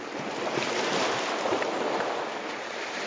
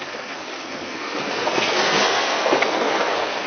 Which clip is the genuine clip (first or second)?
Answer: first